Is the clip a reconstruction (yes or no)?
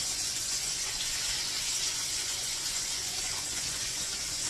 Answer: yes